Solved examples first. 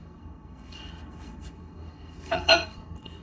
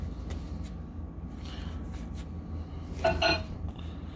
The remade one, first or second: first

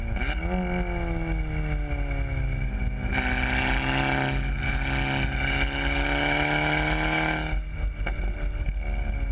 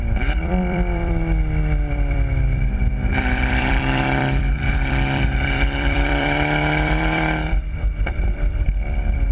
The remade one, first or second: second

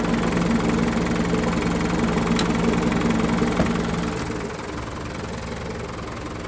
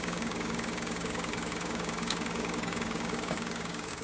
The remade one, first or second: second